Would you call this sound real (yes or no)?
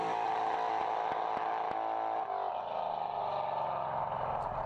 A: yes